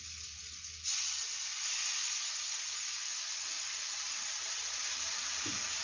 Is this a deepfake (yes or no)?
no